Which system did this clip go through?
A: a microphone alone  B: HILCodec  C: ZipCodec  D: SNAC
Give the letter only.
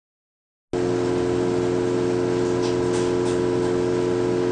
A